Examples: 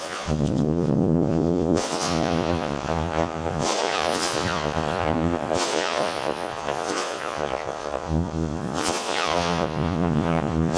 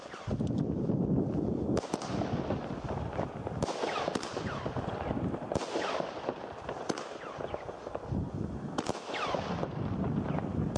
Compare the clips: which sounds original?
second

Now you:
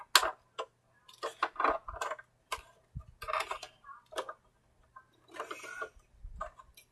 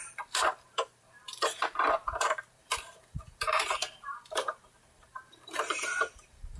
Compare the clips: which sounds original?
first